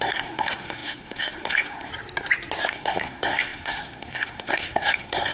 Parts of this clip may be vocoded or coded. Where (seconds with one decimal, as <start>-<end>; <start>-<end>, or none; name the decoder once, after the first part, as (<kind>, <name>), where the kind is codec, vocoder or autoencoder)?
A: 0.0-1.9 (codec, SNAC); 2.7-5.3